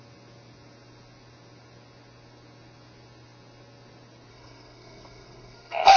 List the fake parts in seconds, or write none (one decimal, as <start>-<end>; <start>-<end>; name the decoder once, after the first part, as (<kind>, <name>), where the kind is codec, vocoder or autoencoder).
4.3-6.0 (codec, SNAC)

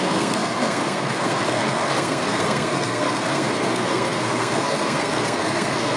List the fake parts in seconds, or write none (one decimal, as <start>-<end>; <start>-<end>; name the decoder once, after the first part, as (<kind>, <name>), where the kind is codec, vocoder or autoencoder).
0.0-6.0 (codec, SNAC)

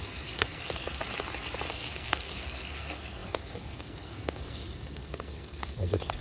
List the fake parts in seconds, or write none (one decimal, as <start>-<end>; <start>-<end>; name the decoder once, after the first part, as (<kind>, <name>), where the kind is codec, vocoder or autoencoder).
0.0-1.0 (codec, SNAC); 1.7-6.2